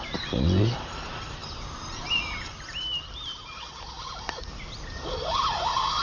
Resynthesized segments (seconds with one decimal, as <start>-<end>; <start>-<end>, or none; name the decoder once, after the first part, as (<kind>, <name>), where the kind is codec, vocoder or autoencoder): none